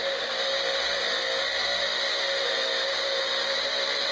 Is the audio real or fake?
real